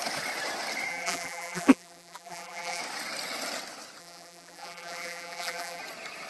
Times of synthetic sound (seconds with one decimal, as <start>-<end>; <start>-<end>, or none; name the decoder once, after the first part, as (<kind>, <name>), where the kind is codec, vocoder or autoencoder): 0.9-2.8 (vocoder, BigVGAN v2); 4.0-5.8